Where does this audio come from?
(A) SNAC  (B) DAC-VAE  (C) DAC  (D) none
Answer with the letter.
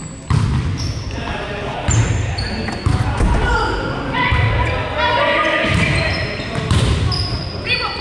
D